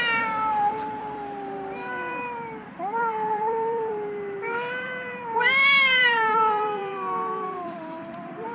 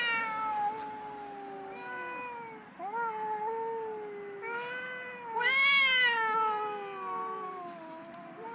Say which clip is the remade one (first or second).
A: first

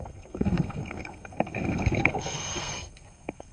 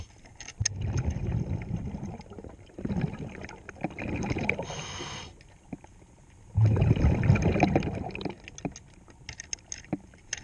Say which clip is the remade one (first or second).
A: first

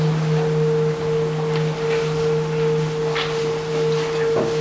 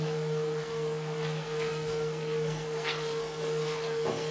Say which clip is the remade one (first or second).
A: second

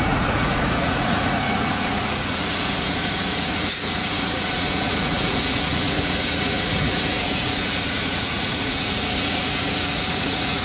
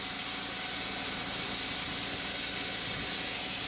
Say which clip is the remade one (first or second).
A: first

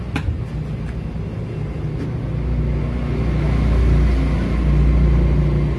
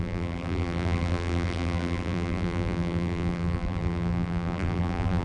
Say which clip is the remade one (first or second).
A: second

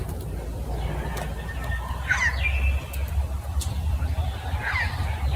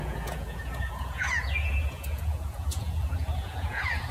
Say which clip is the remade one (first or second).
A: second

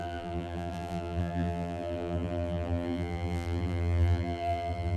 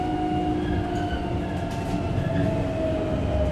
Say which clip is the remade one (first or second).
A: first